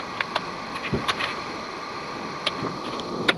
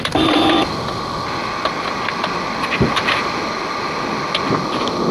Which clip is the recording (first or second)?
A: second